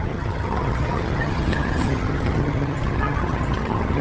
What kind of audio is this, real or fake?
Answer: fake